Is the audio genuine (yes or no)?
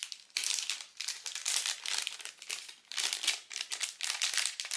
yes